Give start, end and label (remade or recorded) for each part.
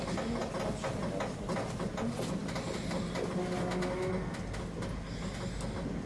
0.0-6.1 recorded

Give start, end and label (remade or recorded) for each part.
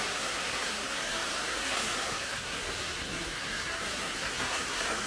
0.0-5.1 remade